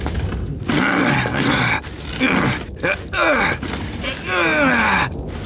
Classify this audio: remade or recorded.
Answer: recorded